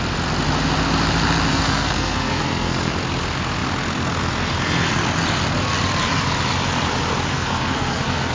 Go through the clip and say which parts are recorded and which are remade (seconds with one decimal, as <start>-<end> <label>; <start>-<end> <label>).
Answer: 0.0-1.5 recorded; 1.5-2.9 remade; 2.9-7.3 recorded; 7.3-8.3 remade